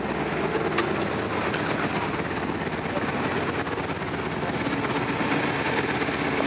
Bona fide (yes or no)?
yes